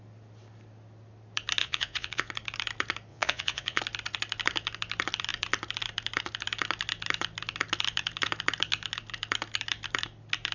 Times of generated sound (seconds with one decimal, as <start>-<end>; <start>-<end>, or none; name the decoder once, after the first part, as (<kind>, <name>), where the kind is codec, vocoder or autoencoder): 1.6-2.3 (vocoder, Vocos); 3.1-3.8